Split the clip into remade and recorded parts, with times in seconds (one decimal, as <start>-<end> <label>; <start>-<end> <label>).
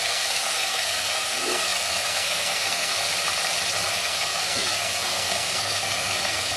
0.0-2.9 remade; 2.9-3.9 recorded; 3.9-6.6 remade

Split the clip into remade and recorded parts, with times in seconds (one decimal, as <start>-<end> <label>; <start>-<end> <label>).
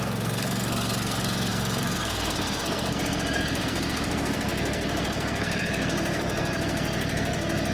0.0-7.7 remade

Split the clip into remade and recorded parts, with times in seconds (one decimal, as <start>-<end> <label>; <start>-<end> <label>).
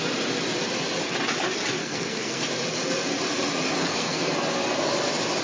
0.0-1.8 recorded; 1.8-2.4 remade; 2.4-3.8 recorded; 3.8-4.3 remade; 4.3-5.4 recorded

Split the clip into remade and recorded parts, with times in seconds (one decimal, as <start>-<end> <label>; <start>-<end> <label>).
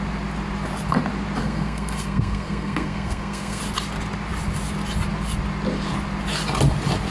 0.0-1.4 recorded; 1.4-3.6 remade; 3.6-7.1 recorded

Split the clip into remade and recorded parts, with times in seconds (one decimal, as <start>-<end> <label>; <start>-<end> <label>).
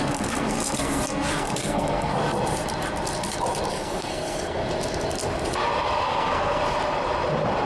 0.0-2.1 remade; 2.1-3.7 recorded; 3.7-4.6 remade; 4.6-6.0 recorded; 6.0-6.6 remade; 6.6-7.7 recorded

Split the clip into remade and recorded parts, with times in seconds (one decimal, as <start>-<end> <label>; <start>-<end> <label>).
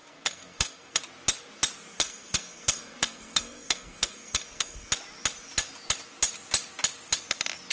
0.0-1.0 remade; 1.0-1.9 recorded; 1.9-4.9 remade; 4.9-7.7 recorded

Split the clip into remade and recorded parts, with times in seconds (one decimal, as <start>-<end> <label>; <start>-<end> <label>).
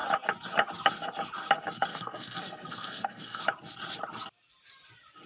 0.0-1.9 recorded; 1.9-3.4 remade; 3.4-5.3 recorded